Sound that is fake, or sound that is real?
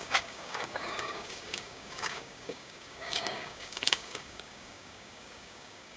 fake